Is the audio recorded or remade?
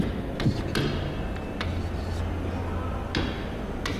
recorded